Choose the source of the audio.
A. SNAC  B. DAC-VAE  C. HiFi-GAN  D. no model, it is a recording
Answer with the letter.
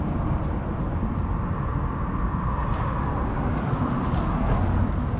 D